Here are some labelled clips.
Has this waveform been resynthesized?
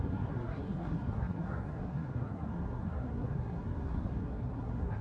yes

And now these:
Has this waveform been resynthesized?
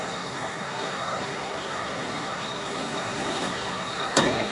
yes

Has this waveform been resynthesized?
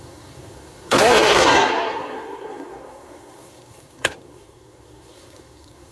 yes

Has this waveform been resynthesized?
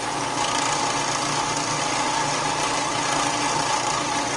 no